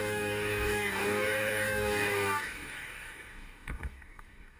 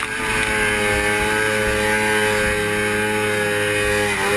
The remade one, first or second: first